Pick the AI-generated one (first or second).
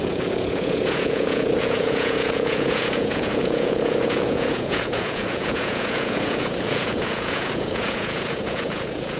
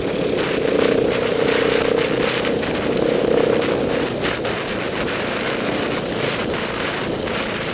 first